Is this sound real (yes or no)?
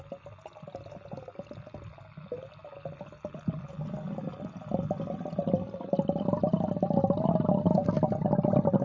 yes